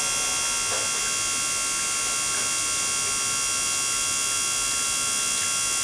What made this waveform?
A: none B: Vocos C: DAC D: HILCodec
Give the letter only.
A